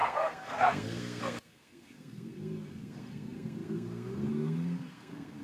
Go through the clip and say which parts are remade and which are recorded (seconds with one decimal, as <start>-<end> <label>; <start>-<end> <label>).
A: 0.0-5.4 remade